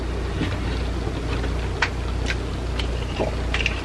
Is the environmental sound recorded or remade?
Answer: recorded